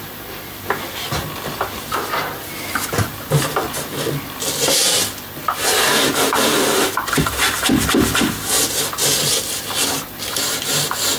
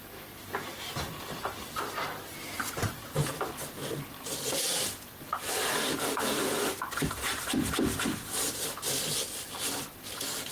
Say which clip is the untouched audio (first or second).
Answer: first